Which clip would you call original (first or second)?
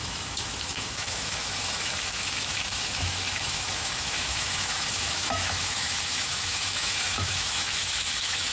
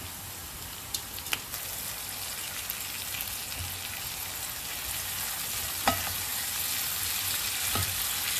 second